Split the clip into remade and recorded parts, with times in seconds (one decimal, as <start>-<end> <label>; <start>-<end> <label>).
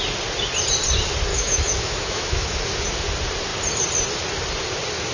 0.0-1.3 recorded; 1.3-2.6 remade; 2.6-5.1 recorded